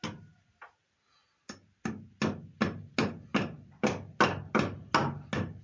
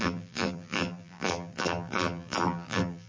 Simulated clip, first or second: second